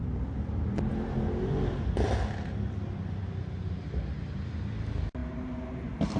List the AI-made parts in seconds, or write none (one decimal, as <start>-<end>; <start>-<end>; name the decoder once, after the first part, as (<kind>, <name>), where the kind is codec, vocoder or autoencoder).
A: none